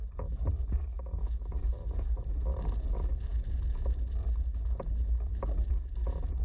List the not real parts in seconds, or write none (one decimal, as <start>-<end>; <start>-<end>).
none